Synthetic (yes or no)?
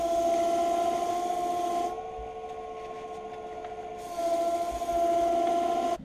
no